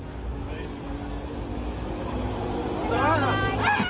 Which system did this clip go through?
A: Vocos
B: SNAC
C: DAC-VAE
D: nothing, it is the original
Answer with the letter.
D